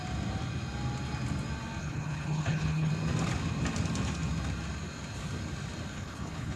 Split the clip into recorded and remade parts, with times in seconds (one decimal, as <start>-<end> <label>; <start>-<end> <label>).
0.0-1.8 recorded; 1.8-2.9 remade; 2.9-5.9 recorded; 5.9-6.6 remade